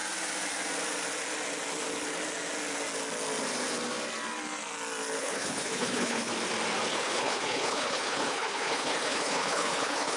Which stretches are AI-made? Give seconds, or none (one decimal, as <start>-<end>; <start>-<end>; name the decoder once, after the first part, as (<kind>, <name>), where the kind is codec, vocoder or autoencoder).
5.2-6.3 (codec, HILCodec); 6.9-10.2